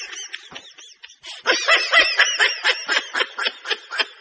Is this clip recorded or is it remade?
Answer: recorded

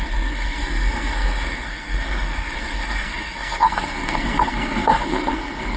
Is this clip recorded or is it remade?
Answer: remade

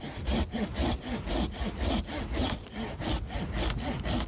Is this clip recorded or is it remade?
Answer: recorded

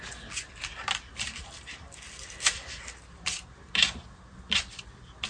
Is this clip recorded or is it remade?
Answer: recorded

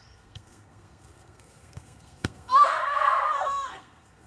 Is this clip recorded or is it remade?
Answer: remade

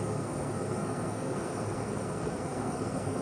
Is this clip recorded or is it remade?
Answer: remade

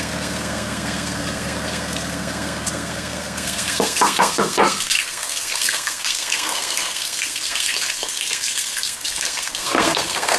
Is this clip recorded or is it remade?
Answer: remade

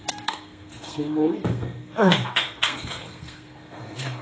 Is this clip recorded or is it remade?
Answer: remade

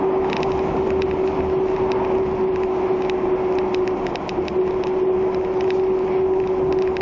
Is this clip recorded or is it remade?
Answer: recorded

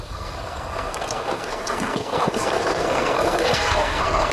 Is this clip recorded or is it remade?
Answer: remade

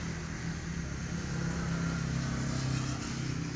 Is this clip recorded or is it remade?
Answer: recorded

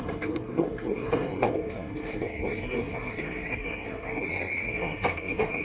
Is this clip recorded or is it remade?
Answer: remade